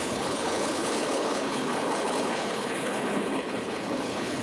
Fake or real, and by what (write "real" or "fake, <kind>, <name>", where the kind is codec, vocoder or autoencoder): fake, codec, HILCodec